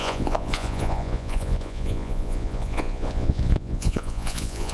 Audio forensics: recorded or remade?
remade